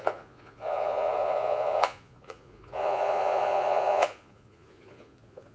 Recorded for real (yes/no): no